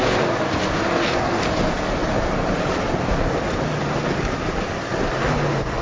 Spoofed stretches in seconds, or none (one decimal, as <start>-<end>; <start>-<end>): none